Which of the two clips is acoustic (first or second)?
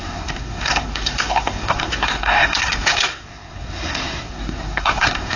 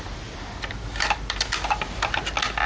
second